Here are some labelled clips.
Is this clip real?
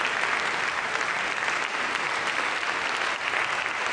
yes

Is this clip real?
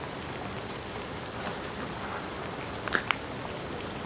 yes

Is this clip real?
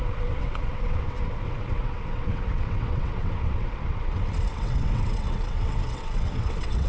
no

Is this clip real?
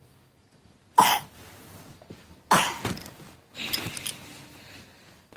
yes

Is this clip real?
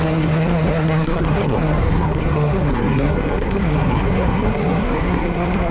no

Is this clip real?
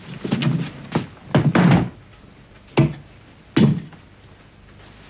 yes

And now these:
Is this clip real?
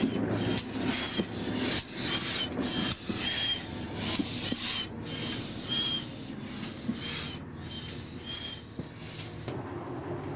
yes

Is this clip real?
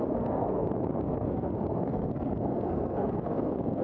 no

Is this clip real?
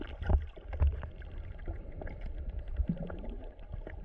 no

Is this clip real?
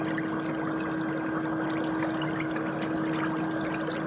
yes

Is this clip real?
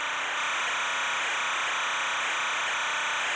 yes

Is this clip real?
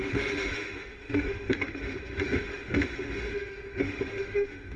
no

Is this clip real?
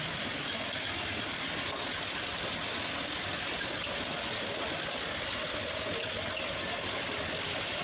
yes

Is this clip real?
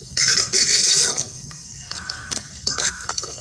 no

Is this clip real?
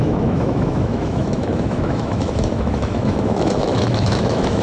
no